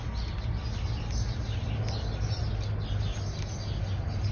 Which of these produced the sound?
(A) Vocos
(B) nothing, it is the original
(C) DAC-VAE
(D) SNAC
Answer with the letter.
B